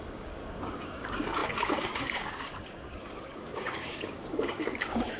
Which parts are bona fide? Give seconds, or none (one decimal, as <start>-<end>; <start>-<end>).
none